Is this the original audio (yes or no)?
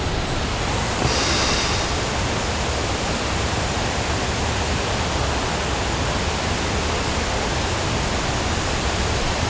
yes